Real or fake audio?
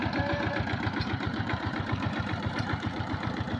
fake